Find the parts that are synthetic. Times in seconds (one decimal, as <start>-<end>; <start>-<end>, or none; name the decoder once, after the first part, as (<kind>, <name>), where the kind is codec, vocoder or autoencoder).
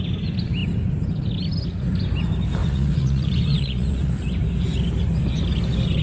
2.6-4.1 (vocoder, Vocos)